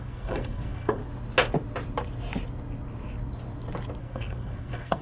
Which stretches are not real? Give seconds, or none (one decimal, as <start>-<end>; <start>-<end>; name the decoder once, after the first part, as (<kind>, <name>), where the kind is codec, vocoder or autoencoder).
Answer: 0.0-1.0 (codec, SNAC); 4.0-5.0